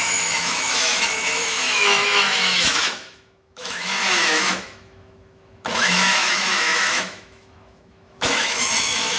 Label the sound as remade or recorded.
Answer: remade